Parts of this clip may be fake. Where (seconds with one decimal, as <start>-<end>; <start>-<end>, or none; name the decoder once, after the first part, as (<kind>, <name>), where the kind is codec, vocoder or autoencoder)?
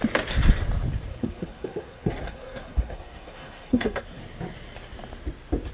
1.1-4.2 (codec, SNAC)